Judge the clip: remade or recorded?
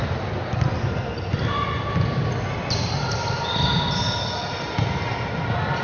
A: recorded